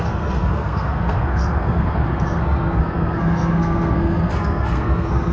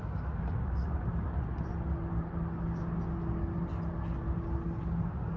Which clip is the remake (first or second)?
first